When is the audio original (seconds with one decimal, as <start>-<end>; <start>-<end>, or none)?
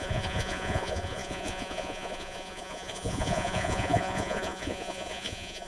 none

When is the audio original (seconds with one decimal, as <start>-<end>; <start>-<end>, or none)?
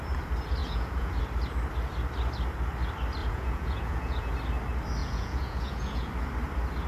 0.0-0.6; 1.2-3.2; 4.3-5.0; 6.1-6.9